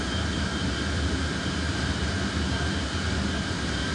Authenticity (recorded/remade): remade